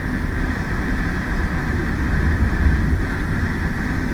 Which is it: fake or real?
real